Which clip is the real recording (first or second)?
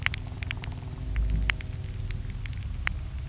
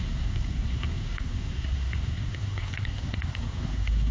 first